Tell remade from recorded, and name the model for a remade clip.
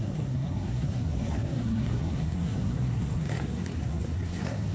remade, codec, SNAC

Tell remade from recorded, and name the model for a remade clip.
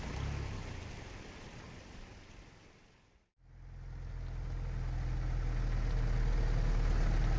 recorded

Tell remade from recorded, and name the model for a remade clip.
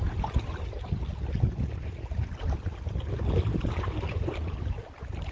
recorded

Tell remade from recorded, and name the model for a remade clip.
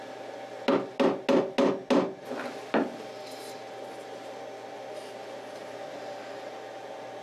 recorded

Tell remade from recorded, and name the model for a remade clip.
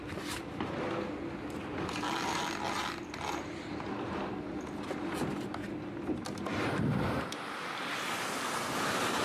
recorded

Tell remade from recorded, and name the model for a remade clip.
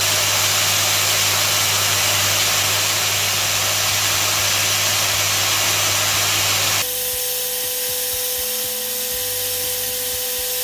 recorded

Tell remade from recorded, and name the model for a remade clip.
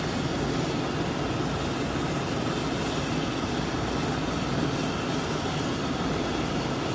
recorded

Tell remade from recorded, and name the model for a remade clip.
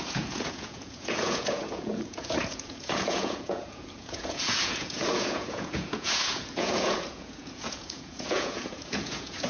remade, vocoder, Vocos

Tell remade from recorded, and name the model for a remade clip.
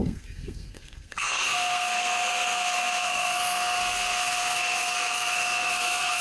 remade, codec, SNAC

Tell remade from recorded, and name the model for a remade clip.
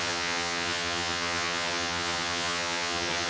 remade, vocoder, HiFi-GAN